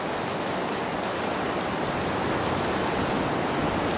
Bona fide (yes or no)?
yes